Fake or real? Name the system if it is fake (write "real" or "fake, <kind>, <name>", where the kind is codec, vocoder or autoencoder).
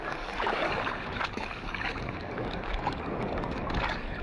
fake, codec, DAC